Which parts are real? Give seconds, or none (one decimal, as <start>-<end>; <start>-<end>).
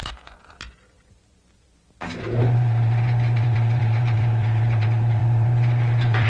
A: none